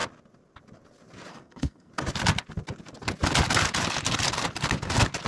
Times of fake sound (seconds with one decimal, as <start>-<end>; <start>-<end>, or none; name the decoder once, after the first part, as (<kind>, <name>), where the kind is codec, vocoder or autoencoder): 1.3-1.9 (codec, SNAC)